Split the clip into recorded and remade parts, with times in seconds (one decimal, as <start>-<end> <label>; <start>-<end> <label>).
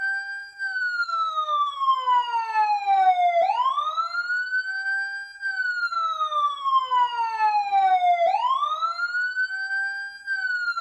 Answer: 0.0-0.4 recorded; 0.4-1.7 remade; 1.7-10.8 recorded